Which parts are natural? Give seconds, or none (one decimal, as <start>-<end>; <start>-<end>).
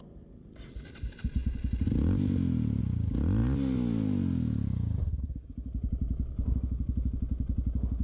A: 0.0-8.0